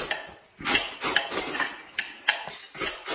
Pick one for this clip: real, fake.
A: real